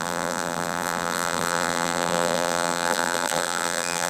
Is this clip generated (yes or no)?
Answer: yes